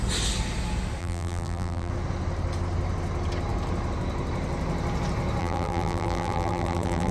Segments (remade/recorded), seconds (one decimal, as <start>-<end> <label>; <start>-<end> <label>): 0.0-1.0 recorded; 1.0-1.9 remade; 1.9-5.4 recorded; 5.4-7.1 remade